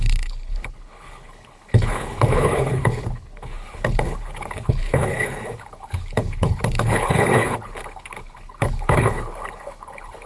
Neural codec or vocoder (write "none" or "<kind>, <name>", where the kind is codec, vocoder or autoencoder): codec, HILCodec